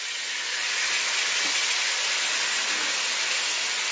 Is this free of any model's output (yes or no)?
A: yes